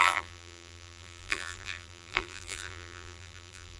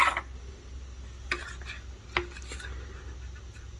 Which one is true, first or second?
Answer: second